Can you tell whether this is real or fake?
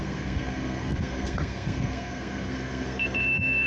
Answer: fake